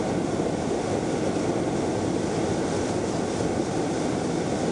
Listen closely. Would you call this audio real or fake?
real